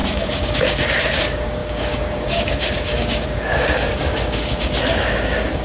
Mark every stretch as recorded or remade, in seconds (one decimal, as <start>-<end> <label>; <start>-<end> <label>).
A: 0.0-5.6 remade